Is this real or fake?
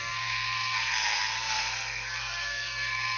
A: fake